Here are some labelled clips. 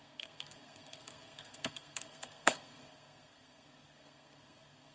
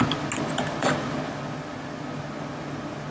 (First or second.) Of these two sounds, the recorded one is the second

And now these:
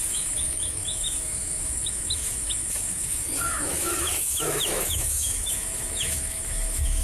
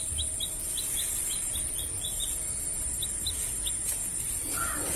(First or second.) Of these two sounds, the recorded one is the second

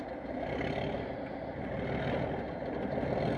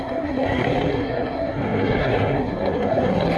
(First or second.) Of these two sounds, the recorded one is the first